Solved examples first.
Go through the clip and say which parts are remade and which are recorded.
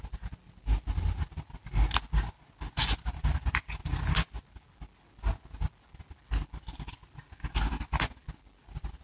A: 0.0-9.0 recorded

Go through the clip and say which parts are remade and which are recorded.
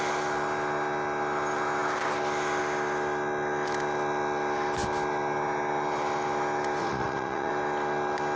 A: 0.0-6.8 recorded; 6.8-7.5 remade; 7.5-8.4 recorded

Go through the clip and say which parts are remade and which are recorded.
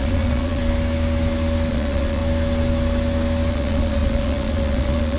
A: 0.0-0.6 remade; 0.6-1.7 recorded; 1.7-2.2 remade; 2.2-3.5 recorded; 3.5-5.2 remade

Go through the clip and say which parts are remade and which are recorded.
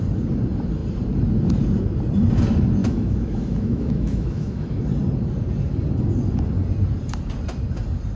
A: 0.0-2.8 recorded; 2.8-4.8 remade; 4.8-8.2 recorded